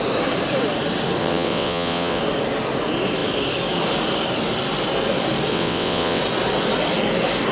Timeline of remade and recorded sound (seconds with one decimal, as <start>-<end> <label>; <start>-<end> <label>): 0.0-1.2 recorded; 1.2-2.2 remade; 2.2-5.5 recorded; 5.5-6.2 remade; 6.2-7.5 recorded